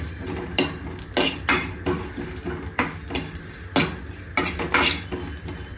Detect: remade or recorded recorded